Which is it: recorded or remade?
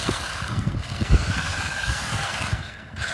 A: remade